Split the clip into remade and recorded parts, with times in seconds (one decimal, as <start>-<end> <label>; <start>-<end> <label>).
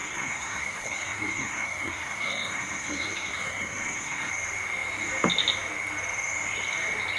0.0-4.3 remade; 4.3-7.2 recorded